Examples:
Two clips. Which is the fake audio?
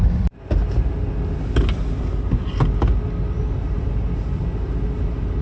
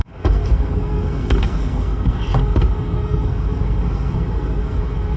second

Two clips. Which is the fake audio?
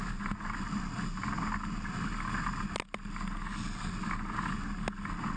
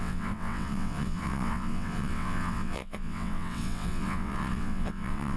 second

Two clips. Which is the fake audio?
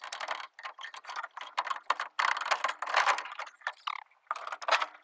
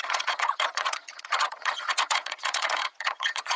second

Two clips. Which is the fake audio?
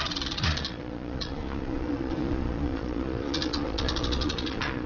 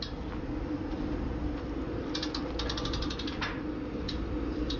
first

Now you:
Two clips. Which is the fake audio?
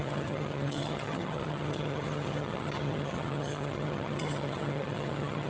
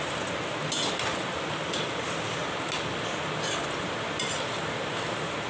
first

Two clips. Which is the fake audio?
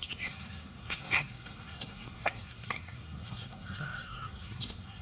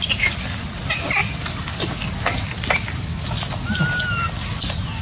first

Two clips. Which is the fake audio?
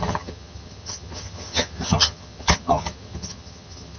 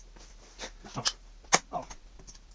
first